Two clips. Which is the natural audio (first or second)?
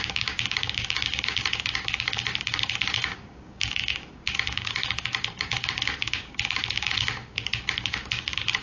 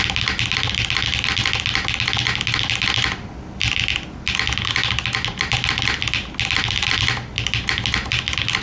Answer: second